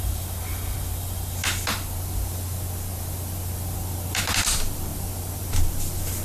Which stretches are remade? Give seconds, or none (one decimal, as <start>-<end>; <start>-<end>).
none